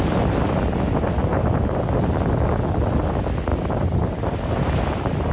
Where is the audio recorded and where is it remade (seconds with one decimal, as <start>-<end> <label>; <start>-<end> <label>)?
0.0-1.3 recorded; 1.3-2.2 remade; 2.2-3.5 recorded; 3.5-4.5 remade; 4.5-5.3 recorded